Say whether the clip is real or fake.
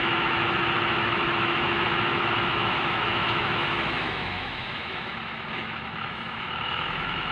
fake